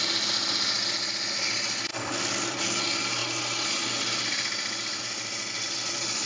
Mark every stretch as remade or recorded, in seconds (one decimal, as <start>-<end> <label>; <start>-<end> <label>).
0.0-1.9 recorded; 1.9-2.6 remade; 2.6-6.3 recorded